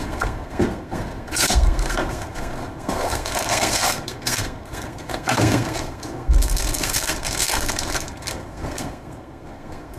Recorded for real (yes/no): no